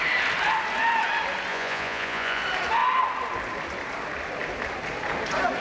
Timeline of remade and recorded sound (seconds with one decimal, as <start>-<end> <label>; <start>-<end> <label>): 0.0-1.5 recorded; 1.5-2.4 remade; 2.4-5.6 recorded